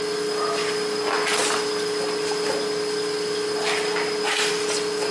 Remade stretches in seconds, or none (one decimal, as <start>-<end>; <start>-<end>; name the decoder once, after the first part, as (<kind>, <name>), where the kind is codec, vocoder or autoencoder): none